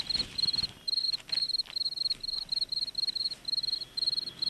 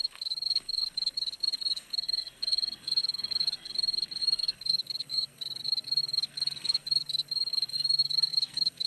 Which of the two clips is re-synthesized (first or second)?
second